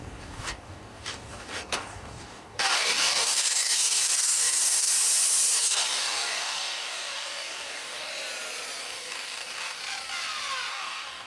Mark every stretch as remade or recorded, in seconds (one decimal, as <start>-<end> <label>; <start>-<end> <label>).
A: 0.0-4.9 remade; 4.9-5.6 recorded; 5.6-8.1 remade; 8.1-8.8 recorded; 8.8-9.8 remade; 9.8-10.7 recorded; 10.7-11.3 remade